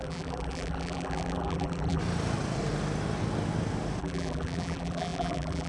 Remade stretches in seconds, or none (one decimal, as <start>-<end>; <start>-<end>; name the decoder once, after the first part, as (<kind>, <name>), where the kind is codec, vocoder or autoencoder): 0.0-2.0 (vocoder, BigVGAN v2); 4.0-5.7